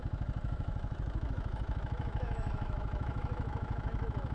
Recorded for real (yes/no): no